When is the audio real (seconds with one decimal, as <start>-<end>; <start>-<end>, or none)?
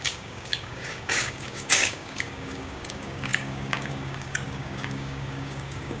none